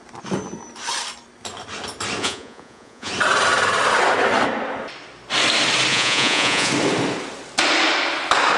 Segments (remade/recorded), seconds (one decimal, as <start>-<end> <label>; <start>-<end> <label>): 0.0-2.2 recorded; 2.2-3.1 remade; 3.1-5.9 recorded; 5.9-6.7 remade; 6.7-8.6 recorded

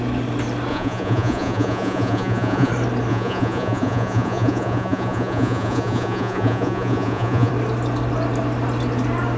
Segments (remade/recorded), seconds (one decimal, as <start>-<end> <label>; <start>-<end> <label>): 0.0-0.7 recorded; 0.7-2.7 remade; 2.7-3.1 recorded; 3.1-7.5 remade; 7.5-9.4 recorded

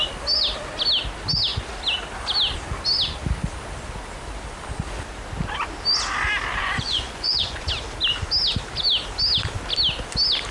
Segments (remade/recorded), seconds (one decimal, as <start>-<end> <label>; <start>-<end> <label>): 0.0-6.6 recorded; 6.6-7.7 remade; 7.7-10.5 recorded

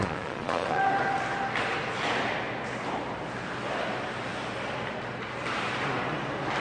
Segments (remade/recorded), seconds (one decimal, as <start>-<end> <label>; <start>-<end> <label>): 0.0-0.8 remade; 0.8-6.6 recorded

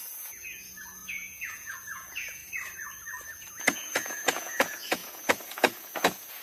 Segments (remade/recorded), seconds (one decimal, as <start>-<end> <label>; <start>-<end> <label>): 0.0-2.4 remade; 2.4-3.5 recorded; 3.5-6.4 remade

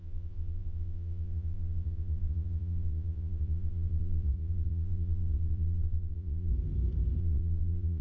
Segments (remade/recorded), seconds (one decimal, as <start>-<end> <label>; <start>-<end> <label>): 0.0-6.5 remade; 6.5-7.2 recorded; 7.2-8.0 remade

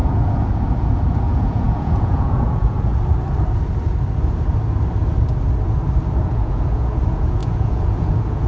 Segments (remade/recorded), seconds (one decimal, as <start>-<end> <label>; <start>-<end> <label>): 0.0-2.9 remade; 2.9-6.2 recorded; 6.2-8.5 remade

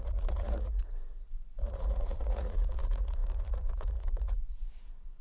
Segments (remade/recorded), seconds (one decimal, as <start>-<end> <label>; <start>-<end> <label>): 0.0-5.2 remade